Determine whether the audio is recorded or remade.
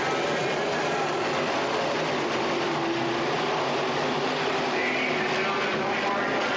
recorded